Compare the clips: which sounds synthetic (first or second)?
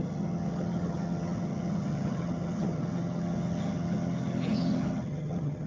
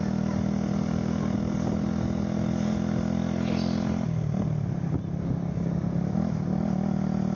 first